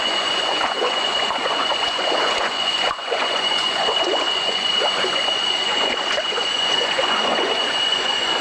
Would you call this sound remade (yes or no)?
yes